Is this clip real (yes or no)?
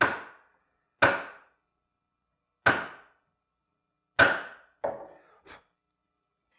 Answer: yes